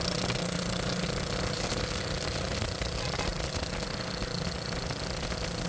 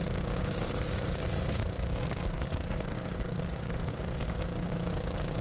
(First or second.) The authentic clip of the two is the first